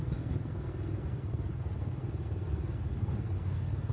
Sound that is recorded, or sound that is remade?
remade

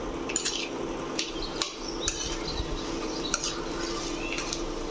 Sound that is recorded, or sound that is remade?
recorded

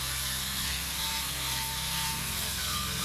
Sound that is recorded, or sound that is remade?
remade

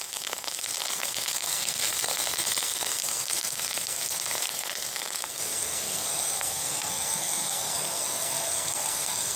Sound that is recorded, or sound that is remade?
remade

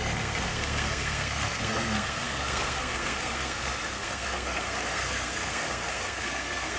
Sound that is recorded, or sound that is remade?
remade